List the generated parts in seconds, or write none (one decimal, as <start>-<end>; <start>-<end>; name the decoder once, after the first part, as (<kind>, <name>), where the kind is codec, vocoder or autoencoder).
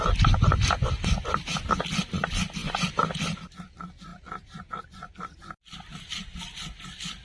4.1-4.7 (vocoder, BigVGAN v2)